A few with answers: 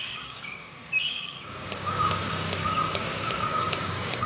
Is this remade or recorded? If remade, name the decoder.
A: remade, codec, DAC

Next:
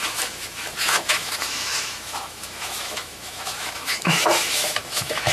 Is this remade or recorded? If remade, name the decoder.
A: remade, autoencoder, DAC-VAE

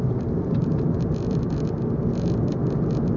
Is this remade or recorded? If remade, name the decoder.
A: recorded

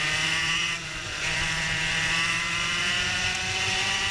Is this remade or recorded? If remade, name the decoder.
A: remade, vocoder, Vocos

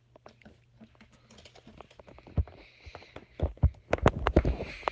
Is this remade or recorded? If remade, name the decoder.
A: recorded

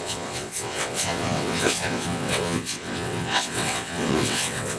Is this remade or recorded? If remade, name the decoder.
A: remade, vocoder, WaveNeXt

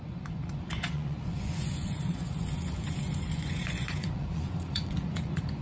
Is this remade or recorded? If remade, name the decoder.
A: remade, vocoder, Vocos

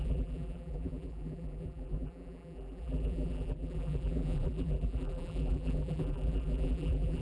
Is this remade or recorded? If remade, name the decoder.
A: remade, vocoder, BigVGAN v2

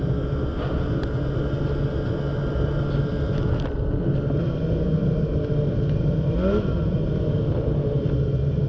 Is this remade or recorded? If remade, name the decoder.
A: recorded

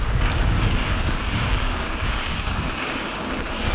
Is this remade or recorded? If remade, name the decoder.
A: remade, codec, DAC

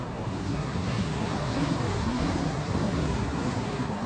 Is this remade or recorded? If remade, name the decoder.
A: remade, codec, SNAC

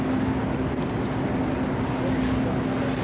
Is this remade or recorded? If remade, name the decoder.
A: recorded